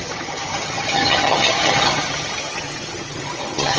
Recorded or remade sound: remade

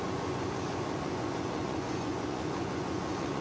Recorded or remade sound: remade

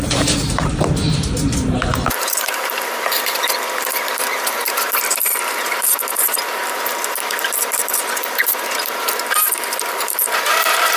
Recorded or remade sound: remade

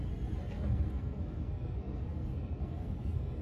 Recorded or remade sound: remade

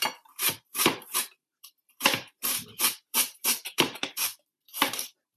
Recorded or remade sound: remade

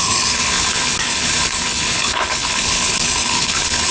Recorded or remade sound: remade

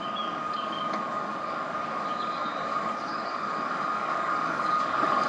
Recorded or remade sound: remade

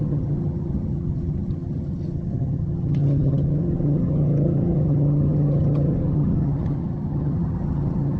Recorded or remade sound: remade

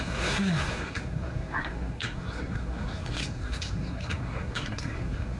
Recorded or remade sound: remade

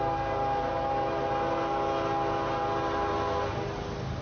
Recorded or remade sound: recorded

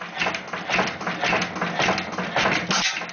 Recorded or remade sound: recorded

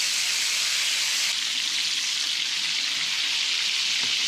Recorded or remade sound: recorded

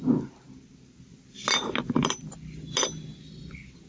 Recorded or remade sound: recorded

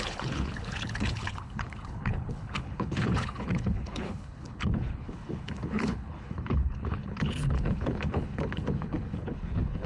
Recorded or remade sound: remade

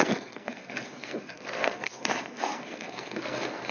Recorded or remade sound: remade